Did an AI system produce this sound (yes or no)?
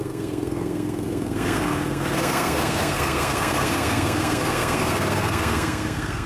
yes